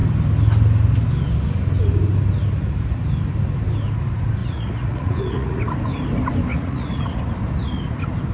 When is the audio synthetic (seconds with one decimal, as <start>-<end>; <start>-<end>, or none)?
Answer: 4.4-5.6; 6.5-7.2